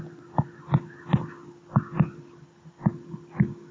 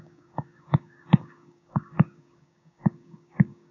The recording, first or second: first